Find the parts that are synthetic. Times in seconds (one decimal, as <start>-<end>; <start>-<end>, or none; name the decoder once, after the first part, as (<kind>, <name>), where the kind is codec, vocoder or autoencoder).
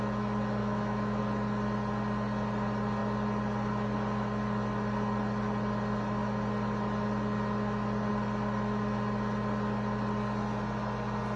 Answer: 0.6-1.2 (autoencoder, DAC-VAE)